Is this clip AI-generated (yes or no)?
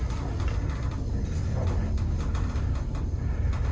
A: no